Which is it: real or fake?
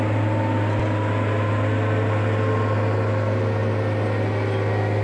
real